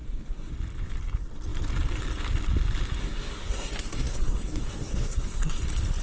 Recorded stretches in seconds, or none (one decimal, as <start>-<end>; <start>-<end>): 0.5-3.0; 5.6-6.0